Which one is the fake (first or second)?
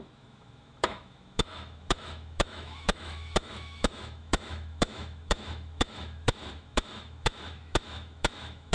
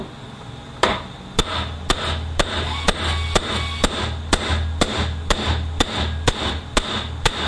first